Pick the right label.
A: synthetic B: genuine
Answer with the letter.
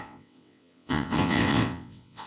A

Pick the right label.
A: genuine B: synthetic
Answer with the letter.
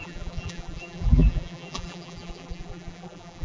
B